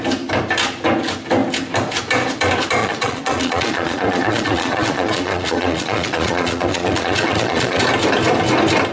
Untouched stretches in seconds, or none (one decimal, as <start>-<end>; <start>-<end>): 0.0-2.8; 7.8-8.9